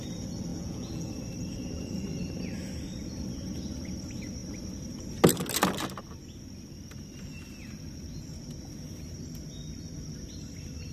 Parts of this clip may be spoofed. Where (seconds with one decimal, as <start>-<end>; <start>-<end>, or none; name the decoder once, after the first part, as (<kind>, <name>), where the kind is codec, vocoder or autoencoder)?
0.5-1.1 (vocoder, Vocos)